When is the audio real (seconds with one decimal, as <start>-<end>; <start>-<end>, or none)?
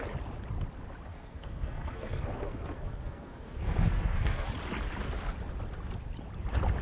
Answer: 0.0-1.1; 4.5-6.8